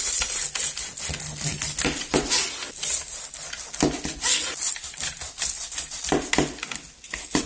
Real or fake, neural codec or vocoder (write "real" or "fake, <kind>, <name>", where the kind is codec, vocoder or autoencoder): real